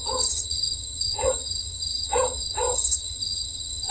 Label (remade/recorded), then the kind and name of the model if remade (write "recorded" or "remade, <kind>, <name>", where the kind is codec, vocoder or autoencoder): remade, vocoder, HiFi-GAN